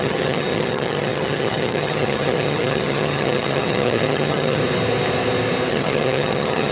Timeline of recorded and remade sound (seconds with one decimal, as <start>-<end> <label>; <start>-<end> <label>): 0.0-4.6 remade; 4.6-5.7 recorded; 5.7-6.7 remade